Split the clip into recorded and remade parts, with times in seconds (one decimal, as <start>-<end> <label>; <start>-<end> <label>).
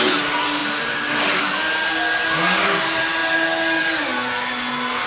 0.0-5.1 recorded